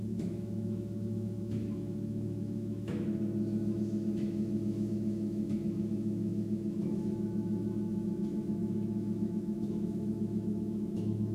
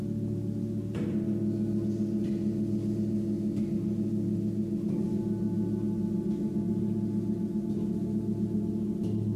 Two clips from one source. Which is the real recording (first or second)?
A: second